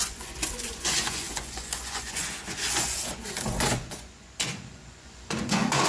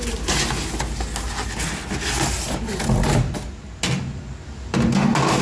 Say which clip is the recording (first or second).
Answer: second